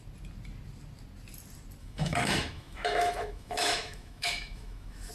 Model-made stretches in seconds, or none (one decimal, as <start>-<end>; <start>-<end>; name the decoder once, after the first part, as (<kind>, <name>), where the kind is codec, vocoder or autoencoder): 1.8-5.1 (autoencoder, DAC-VAE)